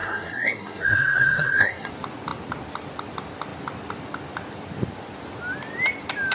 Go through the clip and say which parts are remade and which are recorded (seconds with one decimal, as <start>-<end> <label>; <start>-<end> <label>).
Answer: 0.0-1.9 remade; 1.9-6.3 recorded